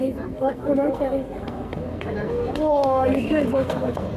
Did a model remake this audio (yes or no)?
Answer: yes